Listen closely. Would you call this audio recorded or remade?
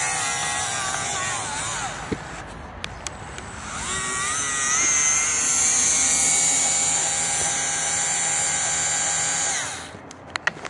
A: recorded